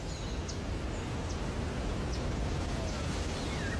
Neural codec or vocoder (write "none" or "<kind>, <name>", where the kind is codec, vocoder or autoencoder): none